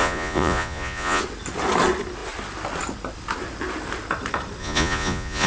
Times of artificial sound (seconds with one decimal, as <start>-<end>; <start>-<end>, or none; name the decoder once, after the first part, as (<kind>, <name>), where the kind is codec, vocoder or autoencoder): 0.0-1.2 (vocoder, Vocos); 4.6-5.5